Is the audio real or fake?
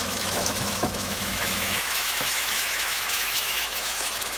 fake